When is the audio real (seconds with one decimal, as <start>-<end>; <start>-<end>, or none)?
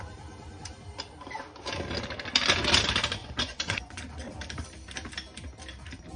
0.0-3.2; 4.0-6.2